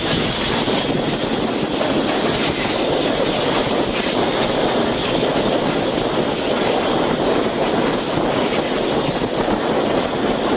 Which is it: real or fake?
real